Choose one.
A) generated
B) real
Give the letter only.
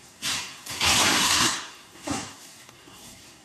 A